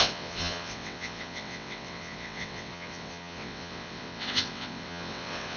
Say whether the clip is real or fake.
fake